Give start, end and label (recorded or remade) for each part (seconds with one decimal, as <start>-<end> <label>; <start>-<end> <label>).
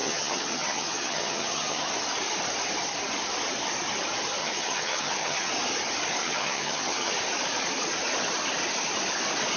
0.0-1.9 remade; 1.9-4.4 recorded; 4.4-5.5 remade; 5.5-6.2 recorded; 6.2-7.1 remade; 7.1-9.6 recorded